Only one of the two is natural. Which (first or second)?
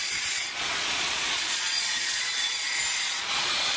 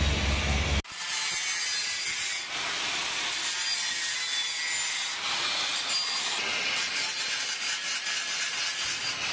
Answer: second